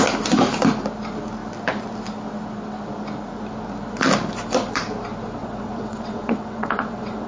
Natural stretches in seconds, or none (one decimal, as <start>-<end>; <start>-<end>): 0.0-5.4